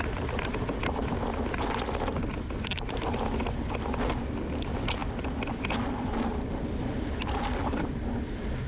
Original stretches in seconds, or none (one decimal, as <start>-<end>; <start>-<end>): 0.0-8.7